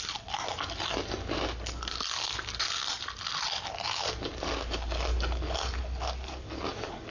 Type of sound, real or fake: real